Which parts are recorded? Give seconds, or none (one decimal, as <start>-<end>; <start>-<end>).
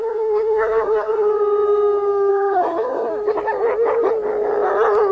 1.3-2.3; 3.1-5.1